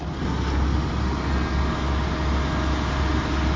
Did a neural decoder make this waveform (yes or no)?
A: no